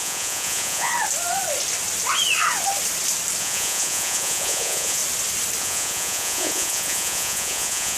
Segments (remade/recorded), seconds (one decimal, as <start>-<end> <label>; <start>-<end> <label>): 0.0-0.9 remade; 0.9-3.4 recorded; 3.4-5.0 remade; 5.0-5.6 recorded; 5.6-8.0 remade